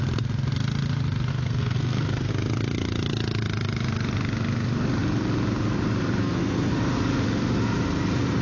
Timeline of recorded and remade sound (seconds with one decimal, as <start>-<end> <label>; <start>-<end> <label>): 0.0-1.3 recorded; 1.3-2.3 remade; 2.3-6.2 recorded; 6.2-6.7 remade; 6.7-8.4 recorded